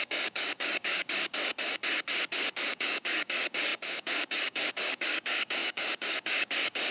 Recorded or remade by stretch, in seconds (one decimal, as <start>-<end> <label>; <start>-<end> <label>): 0.0-1.5 remade; 1.5-2.6 recorded; 2.6-6.9 remade